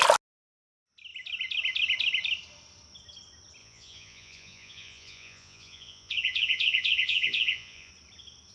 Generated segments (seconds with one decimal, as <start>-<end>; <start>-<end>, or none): 3.6-7.9